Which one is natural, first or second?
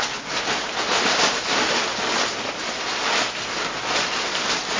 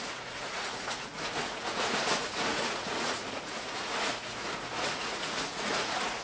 first